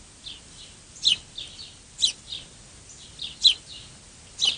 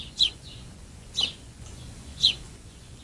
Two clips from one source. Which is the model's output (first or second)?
second